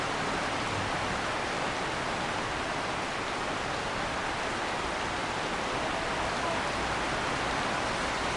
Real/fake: real